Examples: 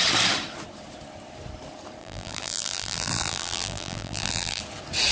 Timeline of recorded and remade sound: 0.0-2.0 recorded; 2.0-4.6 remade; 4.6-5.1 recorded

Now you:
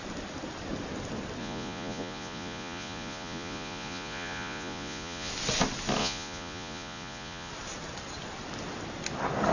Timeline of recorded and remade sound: 0.0-1.4 recorded; 1.4-5.3 remade; 5.3-6.0 recorded; 6.0-7.5 remade; 7.5-9.5 recorded